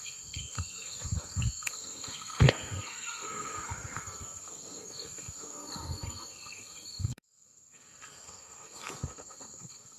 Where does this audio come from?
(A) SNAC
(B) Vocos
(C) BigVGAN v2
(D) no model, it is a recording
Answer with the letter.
A